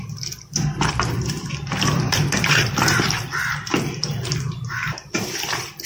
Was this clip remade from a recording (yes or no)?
yes